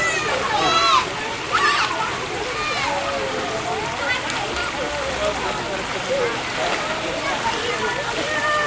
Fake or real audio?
real